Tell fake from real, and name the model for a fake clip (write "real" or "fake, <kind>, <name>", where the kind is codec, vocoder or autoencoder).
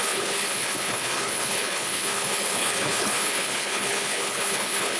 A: fake, codec, HILCodec